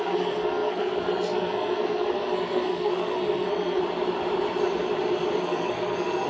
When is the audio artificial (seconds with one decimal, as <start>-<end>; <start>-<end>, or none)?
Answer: 0.0-3.8; 5.4-6.3